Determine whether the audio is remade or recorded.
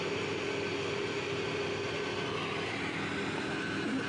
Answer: recorded